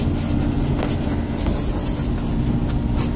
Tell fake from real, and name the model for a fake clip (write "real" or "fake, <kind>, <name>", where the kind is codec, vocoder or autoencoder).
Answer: real